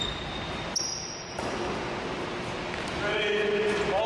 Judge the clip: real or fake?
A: real